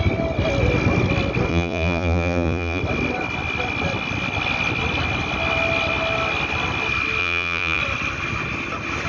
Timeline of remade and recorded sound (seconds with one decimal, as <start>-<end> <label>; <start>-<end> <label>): 0.0-1.5 recorded; 1.5-2.8 remade; 2.8-7.2 recorded; 7.2-7.8 remade; 7.8-9.1 recorded